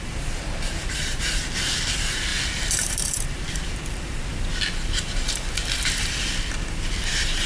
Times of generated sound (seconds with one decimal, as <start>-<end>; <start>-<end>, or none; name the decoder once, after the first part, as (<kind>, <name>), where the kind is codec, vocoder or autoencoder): 0.0-4.3 (vocoder, BigVGAN v2); 7.1-7.5